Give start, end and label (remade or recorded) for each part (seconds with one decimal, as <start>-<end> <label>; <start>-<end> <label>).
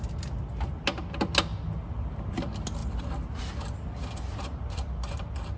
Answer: 0.0-5.6 recorded